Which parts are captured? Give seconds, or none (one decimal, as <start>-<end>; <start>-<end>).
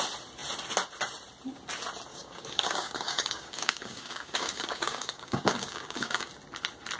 0.0-2.1; 6.3-7.0